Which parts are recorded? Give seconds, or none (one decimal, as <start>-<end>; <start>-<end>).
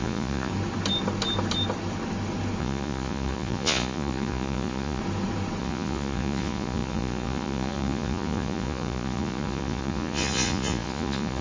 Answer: 0.5-2.6; 5.0-5.6